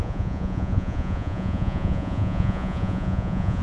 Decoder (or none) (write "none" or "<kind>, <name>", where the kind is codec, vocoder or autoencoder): vocoder, Vocos